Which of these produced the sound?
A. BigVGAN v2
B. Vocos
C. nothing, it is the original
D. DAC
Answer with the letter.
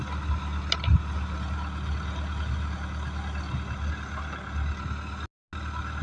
C